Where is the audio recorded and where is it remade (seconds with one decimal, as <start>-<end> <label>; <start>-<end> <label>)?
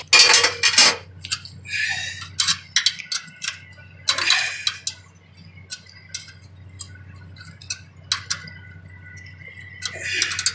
0.0-10.5 recorded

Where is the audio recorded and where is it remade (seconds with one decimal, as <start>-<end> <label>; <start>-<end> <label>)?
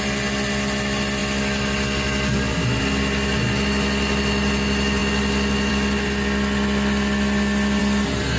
0.0-8.4 recorded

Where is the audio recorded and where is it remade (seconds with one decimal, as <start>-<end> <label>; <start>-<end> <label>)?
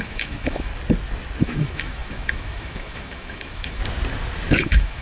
0.0-0.7 remade; 0.7-1.4 recorded; 1.4-3.8 remade; 3.8-4.5 recorded; 4.5-5.0 remade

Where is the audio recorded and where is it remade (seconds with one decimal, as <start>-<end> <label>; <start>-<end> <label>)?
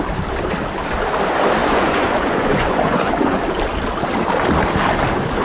0.0-1.6 recorded; 1.6-3.4 remade; 3.4-5.4 recorded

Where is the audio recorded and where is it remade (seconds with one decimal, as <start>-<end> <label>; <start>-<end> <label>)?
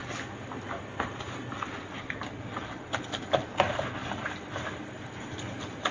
0.0-5.9 recorded